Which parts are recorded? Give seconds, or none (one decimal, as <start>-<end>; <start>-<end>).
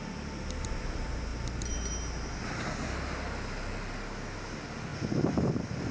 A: 0.0-5.9